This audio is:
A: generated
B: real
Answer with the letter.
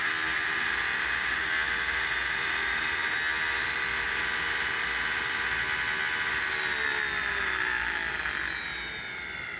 B